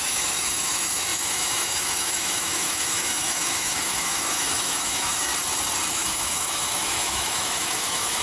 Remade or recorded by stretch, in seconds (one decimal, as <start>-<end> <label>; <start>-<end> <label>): 0.0-5.3 remade; 5.3-5.9 recorded; 5.9-8.2 remade